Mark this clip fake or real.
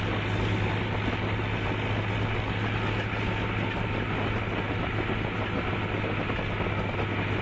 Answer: real